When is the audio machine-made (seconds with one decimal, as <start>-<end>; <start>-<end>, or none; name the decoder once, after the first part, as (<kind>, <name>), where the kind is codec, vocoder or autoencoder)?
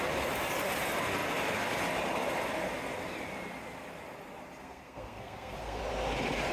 4.6-5.8 (codec, SNAC)